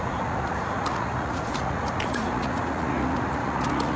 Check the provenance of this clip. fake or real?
fake